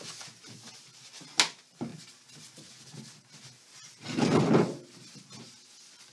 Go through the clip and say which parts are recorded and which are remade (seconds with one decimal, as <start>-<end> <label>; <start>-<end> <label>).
0.0-6.1 recorded